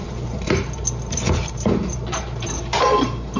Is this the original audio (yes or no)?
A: no